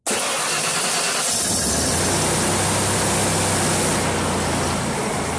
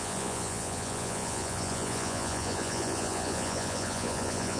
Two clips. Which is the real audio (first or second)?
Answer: first